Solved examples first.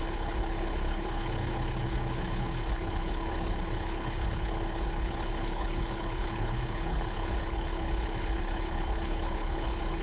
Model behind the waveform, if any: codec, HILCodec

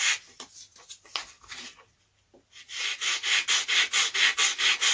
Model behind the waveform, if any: none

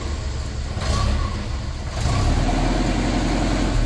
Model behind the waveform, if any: none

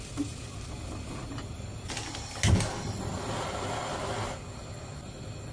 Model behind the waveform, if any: none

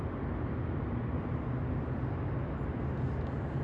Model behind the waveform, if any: none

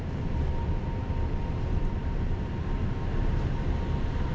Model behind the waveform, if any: none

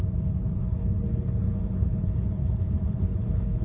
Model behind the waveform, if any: codec, HILCodec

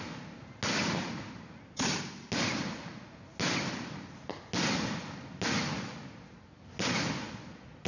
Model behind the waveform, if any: none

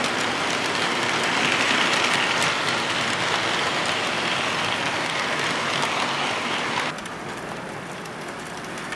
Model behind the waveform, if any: none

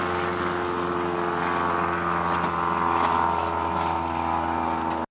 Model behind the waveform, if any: none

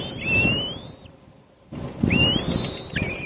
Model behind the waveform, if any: none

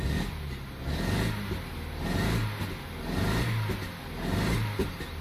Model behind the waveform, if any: none